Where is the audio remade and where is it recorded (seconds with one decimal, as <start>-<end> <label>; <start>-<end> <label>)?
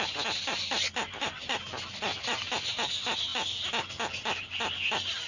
0.0-5.3 recorded